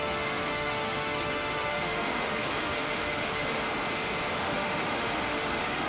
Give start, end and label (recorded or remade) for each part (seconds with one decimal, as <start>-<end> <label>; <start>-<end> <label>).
0.0-3.6 remade; 3.6-4.4 recorded; 4.4-5.9 remade